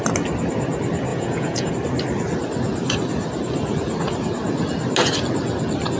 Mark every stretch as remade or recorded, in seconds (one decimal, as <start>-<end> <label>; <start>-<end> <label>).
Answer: 0.0-1.1 recorded; 1.1-1.7 remade; 1.7-6.0 recorded